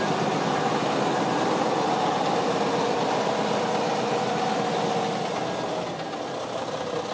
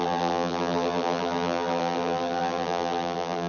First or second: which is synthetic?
second